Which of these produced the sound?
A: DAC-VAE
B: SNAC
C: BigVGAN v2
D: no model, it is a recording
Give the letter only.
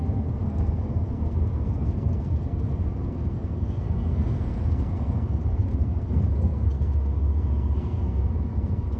B